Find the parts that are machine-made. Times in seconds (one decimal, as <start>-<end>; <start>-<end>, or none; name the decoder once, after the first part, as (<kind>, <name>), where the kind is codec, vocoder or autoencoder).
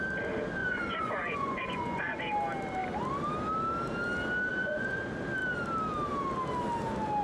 0.6-2.2 (vocoder, Vocos); 4.5-5.0